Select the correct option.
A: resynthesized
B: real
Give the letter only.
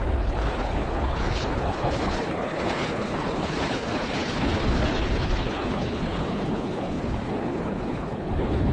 A